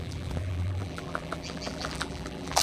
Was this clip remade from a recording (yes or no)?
yes